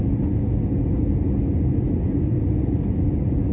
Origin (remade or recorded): recorded